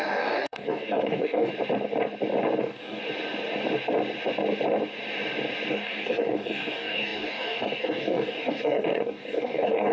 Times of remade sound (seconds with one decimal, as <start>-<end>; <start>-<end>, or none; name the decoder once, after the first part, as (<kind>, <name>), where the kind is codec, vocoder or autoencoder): 0.0-1.5 (codec, DAC); 2.6-3.0; 5.7-9.9